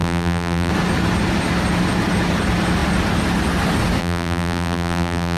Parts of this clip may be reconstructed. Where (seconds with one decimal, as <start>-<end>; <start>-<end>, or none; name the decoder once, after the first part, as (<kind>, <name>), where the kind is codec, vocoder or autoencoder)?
0.0-0.7 (vocoder, BigVGAN v2); 4.0-5.4